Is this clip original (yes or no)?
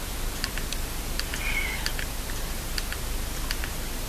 yes